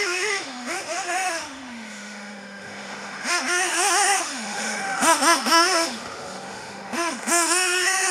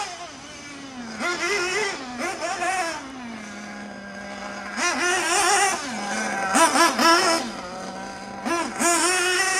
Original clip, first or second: second